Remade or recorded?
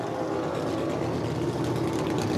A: recorded